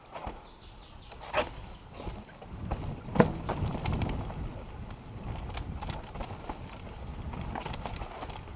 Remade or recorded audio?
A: recorded